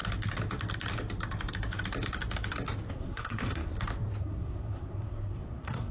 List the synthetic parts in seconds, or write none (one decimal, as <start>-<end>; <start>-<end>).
2.9-3.7; 4.2-5.9